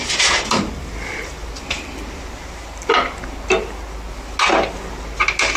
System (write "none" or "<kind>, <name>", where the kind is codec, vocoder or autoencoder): none